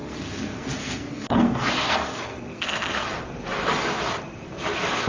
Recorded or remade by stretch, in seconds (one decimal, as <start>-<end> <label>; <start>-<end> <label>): 0.0-3.1 remade; 3.1-5.1 recorded